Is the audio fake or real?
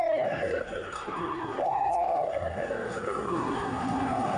fake